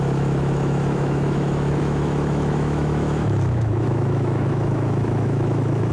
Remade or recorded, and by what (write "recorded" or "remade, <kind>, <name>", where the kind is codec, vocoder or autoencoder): remade, autoencoder, DAC-VAE